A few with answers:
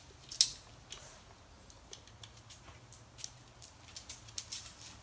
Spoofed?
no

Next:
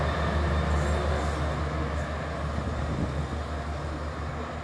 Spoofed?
no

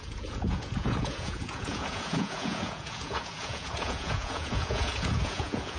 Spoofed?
yes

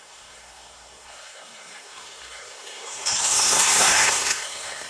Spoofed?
yes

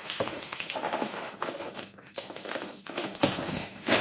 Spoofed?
yes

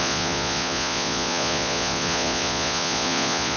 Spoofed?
yes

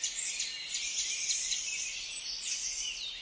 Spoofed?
no